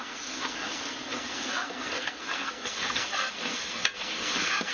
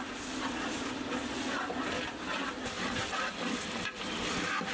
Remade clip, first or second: first